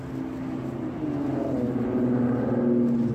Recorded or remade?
recorded